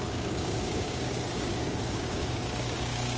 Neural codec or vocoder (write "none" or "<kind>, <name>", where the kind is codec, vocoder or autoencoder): codec, DAC